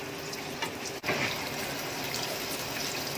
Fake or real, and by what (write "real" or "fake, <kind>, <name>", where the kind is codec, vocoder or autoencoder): real